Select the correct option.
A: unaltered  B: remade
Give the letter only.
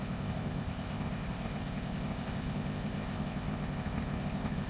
B